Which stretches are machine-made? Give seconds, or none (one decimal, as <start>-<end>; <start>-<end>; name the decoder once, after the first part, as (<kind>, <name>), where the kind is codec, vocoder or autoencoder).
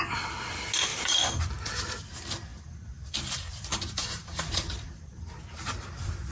0.9-1.4 (vocoder, BigVGAN v2); 2.5-3.2; 3.7-5.4